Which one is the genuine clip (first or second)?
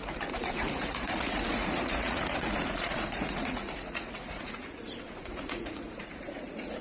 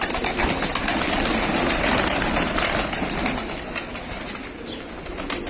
second